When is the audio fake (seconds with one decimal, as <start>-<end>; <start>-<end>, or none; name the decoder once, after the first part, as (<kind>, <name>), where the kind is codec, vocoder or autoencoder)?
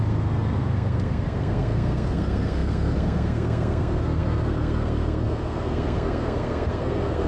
0.0-7.3 (codec, SNAC)